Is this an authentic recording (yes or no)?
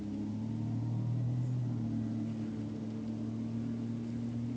yes